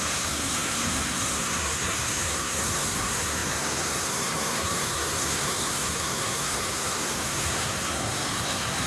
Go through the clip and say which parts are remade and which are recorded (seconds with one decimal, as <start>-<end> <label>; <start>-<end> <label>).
0.0-8.9 remade